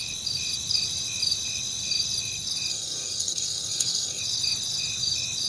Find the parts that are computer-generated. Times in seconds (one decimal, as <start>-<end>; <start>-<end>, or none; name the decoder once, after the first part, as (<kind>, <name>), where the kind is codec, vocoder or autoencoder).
2.7-4.2 (codec, SNAC)